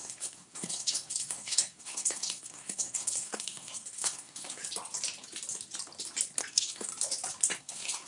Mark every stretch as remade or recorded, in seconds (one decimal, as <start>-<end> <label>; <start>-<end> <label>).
0.0-4.6 remade; 4.6-6.5 recorded; 6.5-6.9 remade; 6.9-7.6 recorded; 7.6-8.1 remade